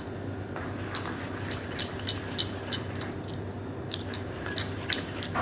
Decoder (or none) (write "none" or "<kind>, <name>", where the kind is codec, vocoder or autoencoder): none